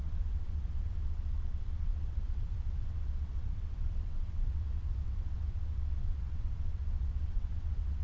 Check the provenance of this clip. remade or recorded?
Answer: remade